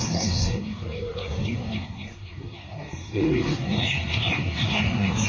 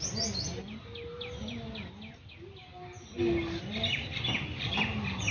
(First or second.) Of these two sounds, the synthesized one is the first